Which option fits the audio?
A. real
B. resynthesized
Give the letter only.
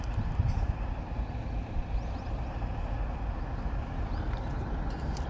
A